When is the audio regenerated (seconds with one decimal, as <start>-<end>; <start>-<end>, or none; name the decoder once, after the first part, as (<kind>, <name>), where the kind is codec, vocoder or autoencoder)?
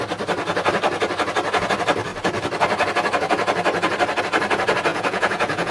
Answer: 4.9-5.7 (vocoder, Vocos)